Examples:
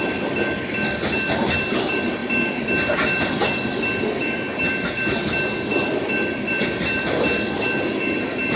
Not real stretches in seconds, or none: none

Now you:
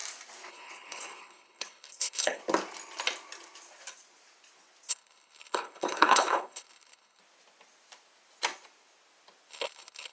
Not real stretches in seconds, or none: 0.5-2.4 (codec, HILCodec); 4.9-7.2; 9.5-10.1

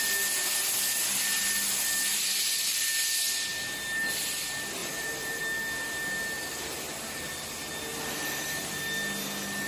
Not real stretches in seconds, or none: 2.1-2.9 (vocoder, BigVGAN v2); 4.8-5.4; 7.9-8.8